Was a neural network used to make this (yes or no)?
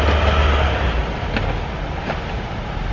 no